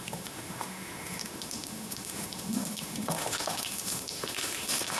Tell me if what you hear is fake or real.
fake